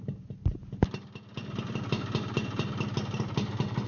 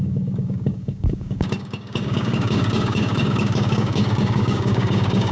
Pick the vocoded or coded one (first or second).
second